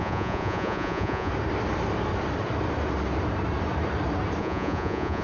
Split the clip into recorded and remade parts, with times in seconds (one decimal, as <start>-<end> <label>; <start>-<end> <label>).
0.0-1.3 remade; 1.3-4.4 recorded; 4.4-5.2 remade